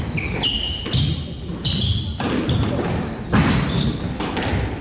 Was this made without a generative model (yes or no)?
yes